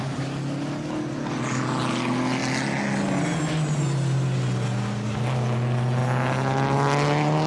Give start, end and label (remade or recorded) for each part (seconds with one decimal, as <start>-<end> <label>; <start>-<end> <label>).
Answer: 0.0-7.5 recorded